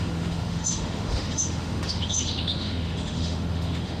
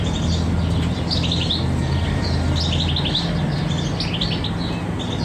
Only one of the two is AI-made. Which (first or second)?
first